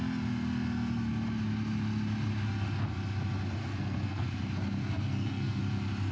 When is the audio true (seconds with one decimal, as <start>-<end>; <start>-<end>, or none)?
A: 0.0-3.6; 4.3-4.8; 5.6-6.1